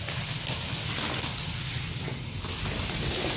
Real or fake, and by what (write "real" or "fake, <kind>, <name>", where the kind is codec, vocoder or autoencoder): real